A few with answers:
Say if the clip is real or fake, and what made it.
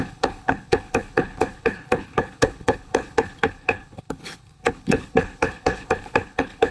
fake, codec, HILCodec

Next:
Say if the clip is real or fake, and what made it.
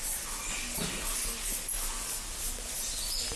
real